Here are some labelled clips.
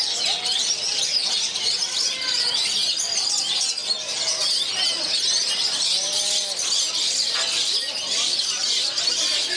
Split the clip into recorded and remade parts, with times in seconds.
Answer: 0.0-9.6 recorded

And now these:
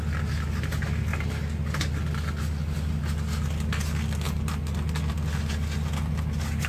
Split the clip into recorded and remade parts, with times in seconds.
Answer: 0.0-6.7 recorded

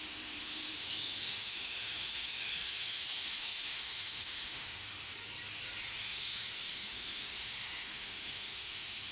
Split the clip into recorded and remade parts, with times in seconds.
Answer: 0.0-5.1 remade; 5.1-6.0 recorded; 6.0-9.1 remade

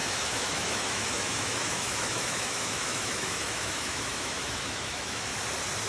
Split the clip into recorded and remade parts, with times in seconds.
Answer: 0.0-5.3 remade; 5.3-5.9 recorded